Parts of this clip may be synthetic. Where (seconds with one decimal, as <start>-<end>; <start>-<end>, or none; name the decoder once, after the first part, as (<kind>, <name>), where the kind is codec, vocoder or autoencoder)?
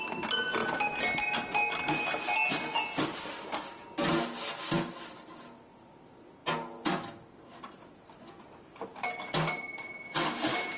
none